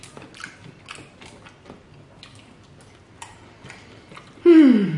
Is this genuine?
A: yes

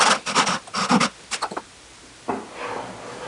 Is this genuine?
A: yes